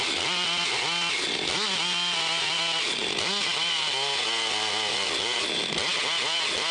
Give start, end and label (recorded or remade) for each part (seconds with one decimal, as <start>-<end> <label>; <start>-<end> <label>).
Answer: 0.0-6.7 recorded